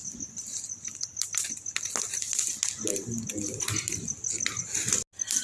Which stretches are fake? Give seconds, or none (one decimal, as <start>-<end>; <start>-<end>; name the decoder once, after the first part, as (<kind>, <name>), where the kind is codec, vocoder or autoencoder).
none